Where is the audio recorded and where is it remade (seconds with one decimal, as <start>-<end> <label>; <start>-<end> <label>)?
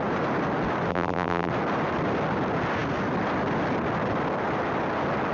0.0-0.9 recorded; 0.9-1.5 remade; 1.5-5.3 recorded